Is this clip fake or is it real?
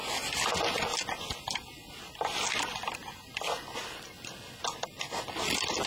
real